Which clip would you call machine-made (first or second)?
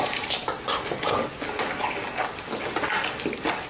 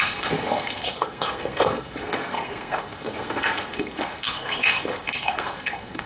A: second